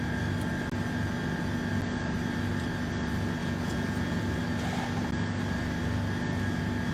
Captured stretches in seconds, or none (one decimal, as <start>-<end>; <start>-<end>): 0.0-3.4; 4.2-6.9